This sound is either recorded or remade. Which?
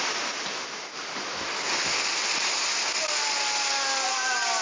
recorded